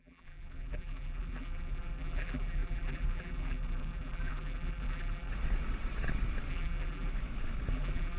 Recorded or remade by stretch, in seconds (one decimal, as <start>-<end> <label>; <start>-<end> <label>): 0.0-5.3 remade; 5.3-6.5 recorded; 6.5-7.1 remade; 7.1-7.7 recorded; 7.7-8.2 remade